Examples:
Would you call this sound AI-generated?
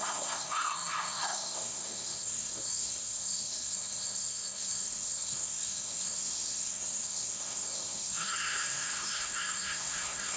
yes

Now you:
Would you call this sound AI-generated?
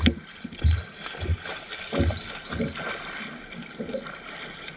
no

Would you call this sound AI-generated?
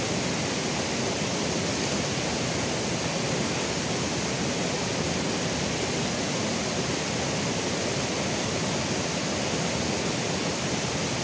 no